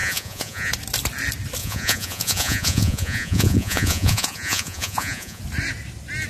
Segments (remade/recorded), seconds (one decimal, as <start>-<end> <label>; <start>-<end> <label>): 0.0-0.7 remade; 0.7-1.6 recorded; 1.6-5.4 remade; 5.4-6.3 recorded